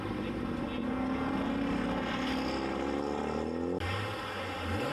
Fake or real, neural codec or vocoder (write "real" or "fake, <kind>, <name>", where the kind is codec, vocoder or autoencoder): real